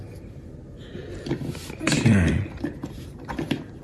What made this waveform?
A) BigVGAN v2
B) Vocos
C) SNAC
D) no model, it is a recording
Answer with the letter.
A